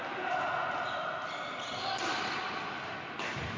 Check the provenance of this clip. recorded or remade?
recorded